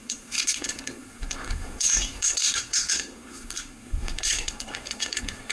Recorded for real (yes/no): no